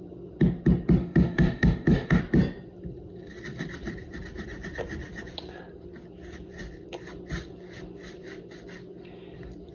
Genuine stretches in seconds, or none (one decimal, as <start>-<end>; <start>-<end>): 0.0-1.0; 2.2-9.7